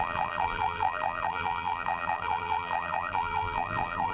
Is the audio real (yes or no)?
no